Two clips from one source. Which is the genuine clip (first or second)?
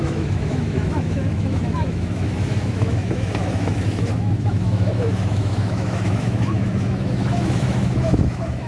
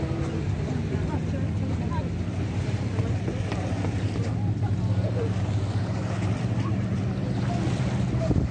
second